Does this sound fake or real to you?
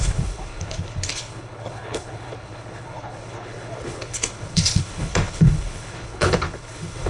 fake